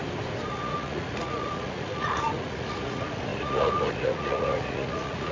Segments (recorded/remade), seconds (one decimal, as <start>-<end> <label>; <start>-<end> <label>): 0.0-0.5 recorded; 0.5-5.3 remade